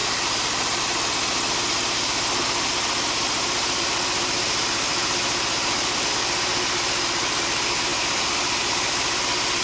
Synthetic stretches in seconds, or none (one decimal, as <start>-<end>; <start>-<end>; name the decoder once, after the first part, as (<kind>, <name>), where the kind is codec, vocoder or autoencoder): 0.0-0.8 (vocoder, BigVGAN v2); 7.9-9.2

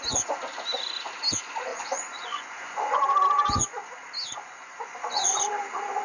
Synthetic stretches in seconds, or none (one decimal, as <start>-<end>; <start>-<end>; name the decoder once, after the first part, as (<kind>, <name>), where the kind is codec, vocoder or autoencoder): 1.7-3.9 (vocoder, Vocos); 4.4-5.5

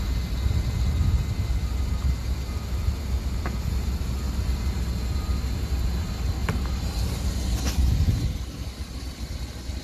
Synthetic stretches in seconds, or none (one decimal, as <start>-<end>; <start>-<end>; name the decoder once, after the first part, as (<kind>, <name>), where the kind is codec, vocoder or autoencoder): none

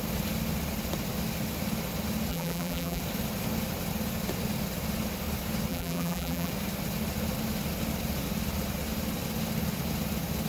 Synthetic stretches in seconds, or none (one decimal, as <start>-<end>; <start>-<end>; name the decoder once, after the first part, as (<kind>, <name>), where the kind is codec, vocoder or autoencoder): 2.3-3.0 (vocoder, BigVGAN v2); 5.7-6.5

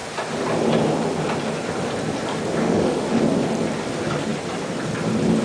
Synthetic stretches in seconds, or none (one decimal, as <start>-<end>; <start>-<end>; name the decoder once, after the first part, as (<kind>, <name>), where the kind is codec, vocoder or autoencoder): 2.6-3.2 (autoencoder, DAC-VAE)